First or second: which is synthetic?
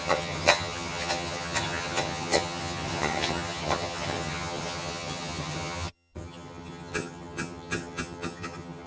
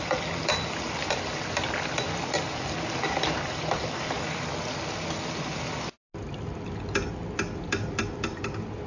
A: first